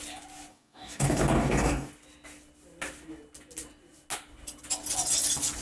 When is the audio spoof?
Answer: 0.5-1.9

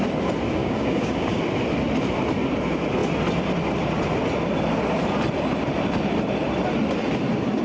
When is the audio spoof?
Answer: 0.6-1.4